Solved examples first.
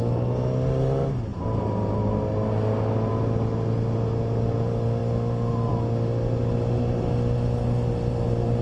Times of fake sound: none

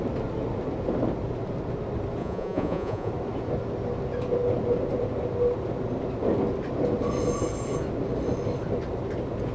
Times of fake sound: 2.2-3.1 (vocoder, Vocos)